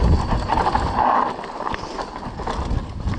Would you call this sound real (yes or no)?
yes